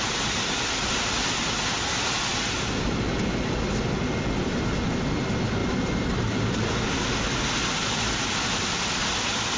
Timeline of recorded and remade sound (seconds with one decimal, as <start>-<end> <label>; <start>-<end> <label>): 0.0-5.6 recorded; 5.6-9.0 remade; 9.0-9.6 recorded